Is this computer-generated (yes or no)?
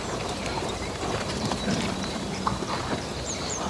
yes